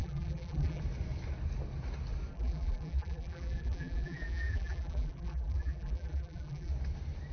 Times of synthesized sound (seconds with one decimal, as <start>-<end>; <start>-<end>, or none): 0.0-0.8; 2.3-6.7